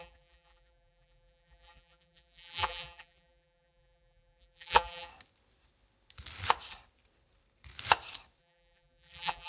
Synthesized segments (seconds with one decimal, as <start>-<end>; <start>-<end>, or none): 0.0-5.1; 8.4-9.5